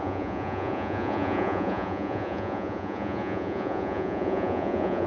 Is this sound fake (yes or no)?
yes